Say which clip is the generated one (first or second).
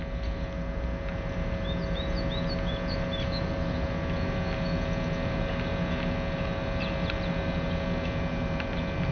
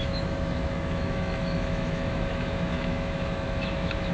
second